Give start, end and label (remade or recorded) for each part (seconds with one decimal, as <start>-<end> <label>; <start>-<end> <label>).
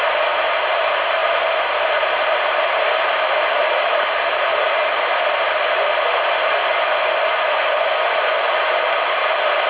0.0-6.6 recorded; 6.6-8.6 remade; 8.6-9.7 recorded